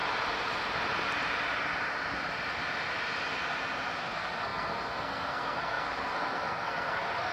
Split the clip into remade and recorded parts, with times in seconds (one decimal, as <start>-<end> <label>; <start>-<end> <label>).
0.0-4.0 recorded; 4.0-7.3 remade